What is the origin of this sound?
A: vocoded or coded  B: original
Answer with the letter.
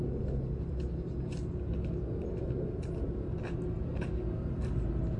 B